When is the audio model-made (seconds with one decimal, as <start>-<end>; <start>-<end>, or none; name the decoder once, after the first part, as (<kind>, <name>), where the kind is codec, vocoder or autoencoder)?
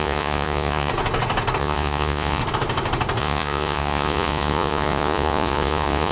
0.0-0.9 (vocoder, Vocos); 1.6-2.4; 3.2-6.1